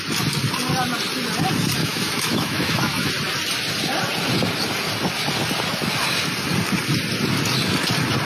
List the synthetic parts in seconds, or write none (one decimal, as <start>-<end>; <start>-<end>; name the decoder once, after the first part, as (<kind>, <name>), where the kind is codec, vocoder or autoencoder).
1.8-3.1 (autoencoder, DAC-VAE)